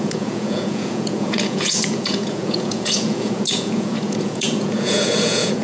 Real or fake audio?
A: fake